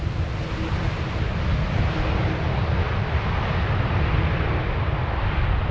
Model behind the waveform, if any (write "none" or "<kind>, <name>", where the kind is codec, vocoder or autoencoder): none